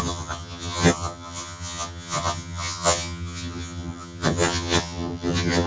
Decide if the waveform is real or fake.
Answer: fake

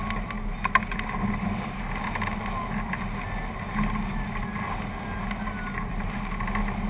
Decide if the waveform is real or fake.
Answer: real